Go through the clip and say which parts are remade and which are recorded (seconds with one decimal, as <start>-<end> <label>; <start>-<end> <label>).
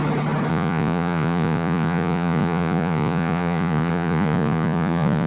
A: 0.0-0.5 recorded; 0.5-5.3 remade